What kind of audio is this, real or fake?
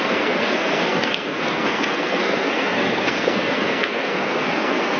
fake